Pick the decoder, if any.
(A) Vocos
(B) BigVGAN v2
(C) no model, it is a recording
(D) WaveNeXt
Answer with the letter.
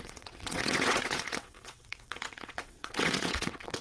D